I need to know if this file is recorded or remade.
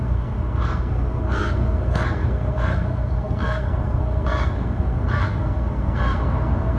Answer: remade